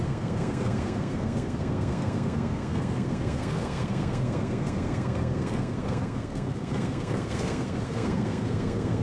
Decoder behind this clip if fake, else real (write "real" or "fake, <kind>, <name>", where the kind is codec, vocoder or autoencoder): fake, codec, SNAC